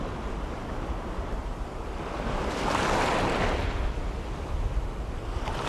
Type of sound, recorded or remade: recorded